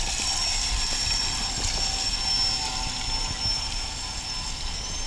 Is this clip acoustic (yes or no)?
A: yes